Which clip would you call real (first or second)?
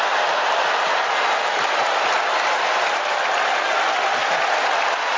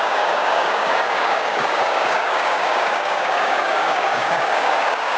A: first